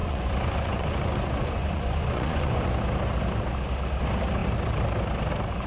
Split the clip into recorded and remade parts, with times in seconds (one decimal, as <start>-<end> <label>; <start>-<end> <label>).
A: 0.0-2.7 remade; 2.7-5.7 recorded